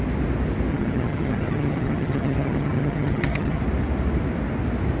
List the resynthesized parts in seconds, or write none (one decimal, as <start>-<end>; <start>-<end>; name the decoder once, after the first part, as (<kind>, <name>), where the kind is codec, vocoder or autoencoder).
0.7-3.6 (vocoder, HiFi-GAN)